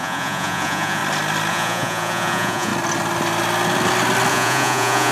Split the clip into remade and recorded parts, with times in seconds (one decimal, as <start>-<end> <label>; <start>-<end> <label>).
0.0-1.0 remade; 1.0-1.5 recorded; 1.5-2.7 remade; 2.7-4.3 recorded; 4.3-5.1 remade